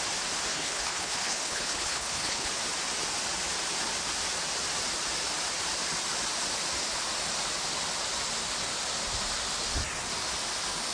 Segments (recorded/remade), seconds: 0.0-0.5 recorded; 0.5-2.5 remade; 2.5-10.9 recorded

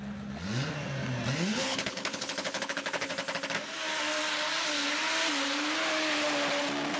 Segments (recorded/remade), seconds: 0.0-1.5 recorded; 1.5-3.1 remade; 3.1-7.0 recorded

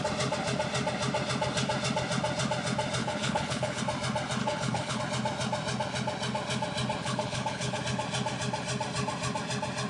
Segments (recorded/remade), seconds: 0.0-3.0 recorded; 3.0-3.8 remade; 3.8-4.4 recorded; 4.4-5.0 remade; 5.0-7.0 recorded; 7.0-7.8 remade; 7.8-9.9 recorded

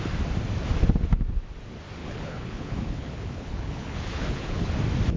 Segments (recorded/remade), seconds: 0.0-2.0 recorded; 2.0-4.7 remade; 4.7-5.2 recorded

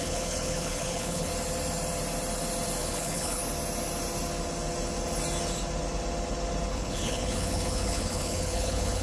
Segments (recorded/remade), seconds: 0.0-1.3 remade; 1.3-2.8 recorded; 2.8-3.4 remade; 3.4-6.7 recorded; 6.7-9.0 remade

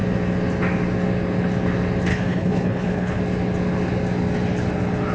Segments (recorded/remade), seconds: 0.0-2.1 recorded; 2.1-3.2 remade; 3.2-5.1 recorded

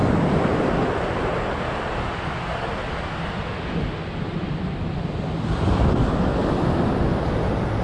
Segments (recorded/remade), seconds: 0.0-7.8 recorded